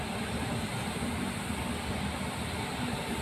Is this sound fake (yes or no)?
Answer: no